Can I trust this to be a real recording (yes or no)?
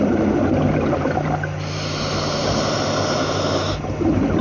yes